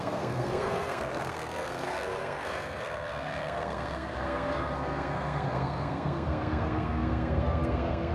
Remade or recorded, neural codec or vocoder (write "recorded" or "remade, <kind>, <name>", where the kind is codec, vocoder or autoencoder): remade, codec, SNAC